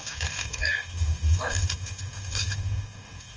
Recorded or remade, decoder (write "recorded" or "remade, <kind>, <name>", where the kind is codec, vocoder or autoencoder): remade, codec, DAC